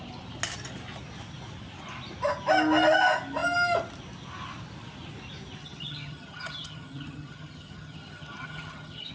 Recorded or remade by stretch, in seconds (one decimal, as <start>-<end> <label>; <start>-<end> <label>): 0.0-5.6 recorded; 5.6-9.1 remade